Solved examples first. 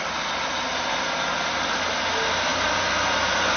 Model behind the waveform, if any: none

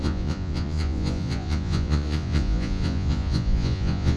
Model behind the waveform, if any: vocoder, Vocos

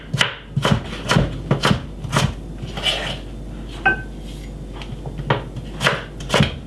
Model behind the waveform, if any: none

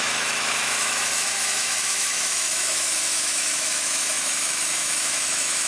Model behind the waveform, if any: autoencoder, DAC-VAE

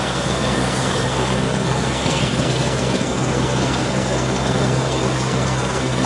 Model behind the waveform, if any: codec, SNAC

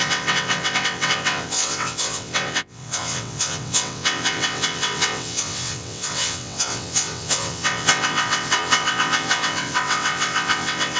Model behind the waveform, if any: vocoder, WaveNeXt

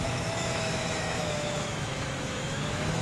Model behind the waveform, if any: autoencoder, DAC-VAE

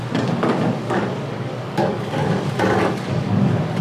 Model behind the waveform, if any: codec, DAC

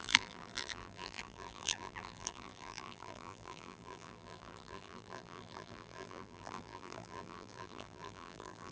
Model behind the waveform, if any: vocoder, BigVGAN v2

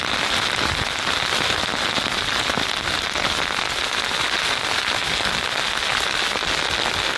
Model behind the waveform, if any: none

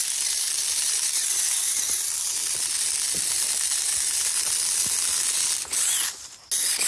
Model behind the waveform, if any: none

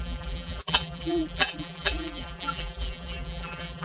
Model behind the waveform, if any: vocoder, BigVGAN v2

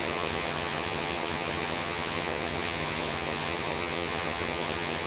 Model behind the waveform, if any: vocoder, HiFi-GAN